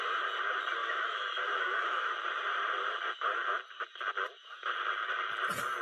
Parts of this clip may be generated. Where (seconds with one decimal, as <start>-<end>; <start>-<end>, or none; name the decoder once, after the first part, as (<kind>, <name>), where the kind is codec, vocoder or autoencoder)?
0.8-2.1 (autoencoder, DAC-VAE)

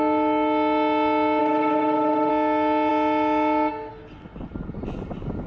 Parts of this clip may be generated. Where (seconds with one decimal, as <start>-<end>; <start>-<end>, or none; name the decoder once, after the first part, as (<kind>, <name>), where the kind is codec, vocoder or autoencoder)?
1.4-2.3 (autoencoder, DAC-VAE)

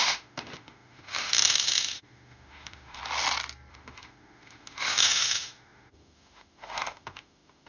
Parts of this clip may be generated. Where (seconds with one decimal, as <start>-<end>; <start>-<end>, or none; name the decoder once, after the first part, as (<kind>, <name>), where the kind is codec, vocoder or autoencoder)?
0.0-3.0 (autoencoder, DAC-VAE); 3.7-7.7